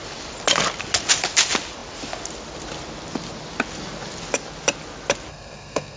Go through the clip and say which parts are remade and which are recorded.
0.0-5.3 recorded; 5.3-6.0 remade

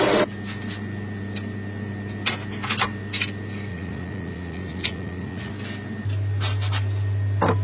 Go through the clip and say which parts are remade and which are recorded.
0.0-3.7 recorded; 3.7-5.5 remade; 5.5-7.6 recorded

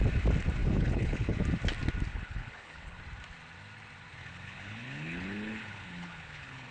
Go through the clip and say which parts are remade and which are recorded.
0.0-0.6 recorded; 0.6-1.4 remade; 1.4-2.1 recorded; 2.1-3.0 remade; 3.0-4.2 recorded; 4.2-6.7 remade

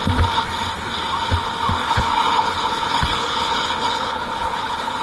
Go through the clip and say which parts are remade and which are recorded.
0.0-1.8 recorded; 1.8-5.0 remade

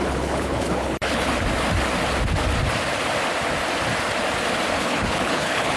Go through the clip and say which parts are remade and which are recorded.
0.0-1.3 remade; 1.3-4.8 recorded; 4.8-5.8 remade

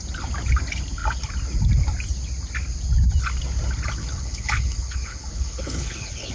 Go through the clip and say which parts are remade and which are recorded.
0.0-4.0 recorded; 4.0-6.3 remade

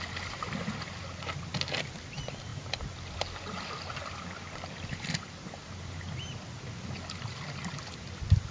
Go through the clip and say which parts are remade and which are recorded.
0.0-8.5 recorded